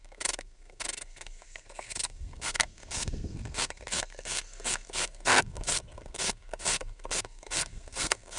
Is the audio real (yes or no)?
no